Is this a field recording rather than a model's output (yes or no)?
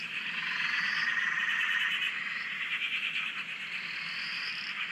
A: yes